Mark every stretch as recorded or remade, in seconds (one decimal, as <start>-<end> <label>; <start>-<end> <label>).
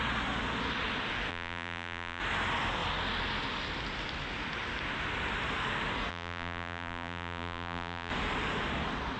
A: 0.0-1.3 recorded; 1.3-2.2 remade; 2.2-6.1 recorded; 6.1-8.1 remade; 8.1-9.2 recorded